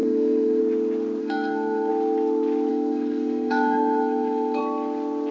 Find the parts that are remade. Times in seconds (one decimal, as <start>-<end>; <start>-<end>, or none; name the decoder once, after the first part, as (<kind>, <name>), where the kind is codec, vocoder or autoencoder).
0.0-0.6 (codec, SNAC); 1.2-1.9; 2.7-4.6